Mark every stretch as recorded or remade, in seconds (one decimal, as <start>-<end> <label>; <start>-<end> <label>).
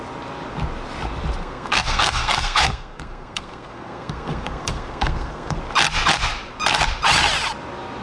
0.0-1.4 recorded; 1.4-5.6 remade; 5.6-8.0 recorded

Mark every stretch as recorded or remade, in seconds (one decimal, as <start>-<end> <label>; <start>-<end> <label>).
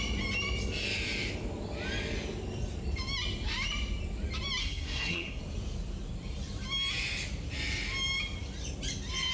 0.0-4.6 recorded; 4.6-5.4 remade; 5.4-9.3 recorded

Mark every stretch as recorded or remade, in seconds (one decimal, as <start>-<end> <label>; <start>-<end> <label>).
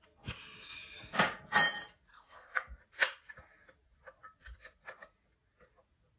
0.0-2.1 recorded; 2.1-2.8 remade; 2.8-6.2 recorded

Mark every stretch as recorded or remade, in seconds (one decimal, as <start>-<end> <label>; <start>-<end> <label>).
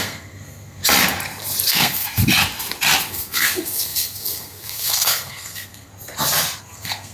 0.0-0.8 remade; 0.8-1.7 recorded; 1.7-2.2 remade; 2.2-3.1 recorded; 3.1-5.9 remade; 5.9-6.6 recorded; 6.6-7.1 remade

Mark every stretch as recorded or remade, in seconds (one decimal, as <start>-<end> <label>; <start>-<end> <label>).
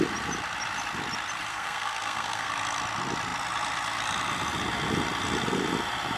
0.0-1.5 recorded; 1.5-2.5 remade; 2.5-6.2 recorded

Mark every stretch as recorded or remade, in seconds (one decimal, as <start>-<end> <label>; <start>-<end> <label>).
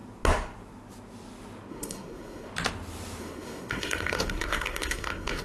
0.0-1.7 recorded; 1.7-2.5 remade; 2.5-3.2 recorded; 3.2-5.4 remade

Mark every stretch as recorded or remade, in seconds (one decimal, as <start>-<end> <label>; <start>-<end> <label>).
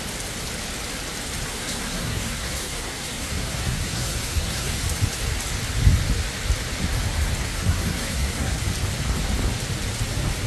0.0-1.5 recorded; 1.5-4.8 remade; 4.8-7.4 recorded; 7.4-8.6 remade; 8.6-10.5 recorded